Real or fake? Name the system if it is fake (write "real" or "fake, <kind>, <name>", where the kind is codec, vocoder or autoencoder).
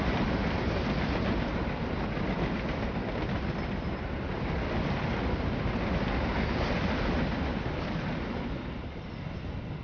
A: real